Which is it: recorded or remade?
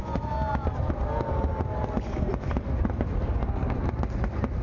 recorded